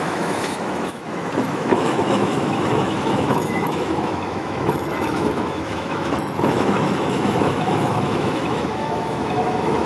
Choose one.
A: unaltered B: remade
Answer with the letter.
B